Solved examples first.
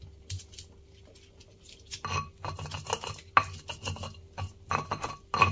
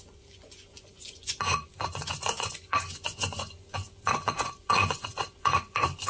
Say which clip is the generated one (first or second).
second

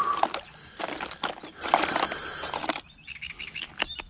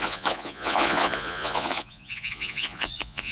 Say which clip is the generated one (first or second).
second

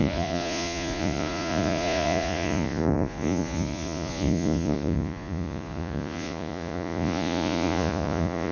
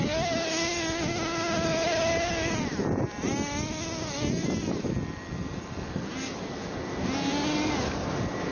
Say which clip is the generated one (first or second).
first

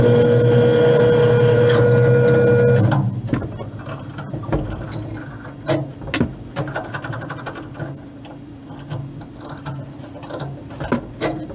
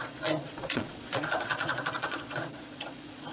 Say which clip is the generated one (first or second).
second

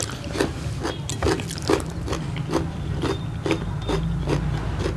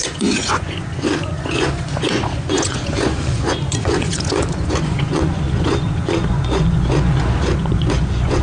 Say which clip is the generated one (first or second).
second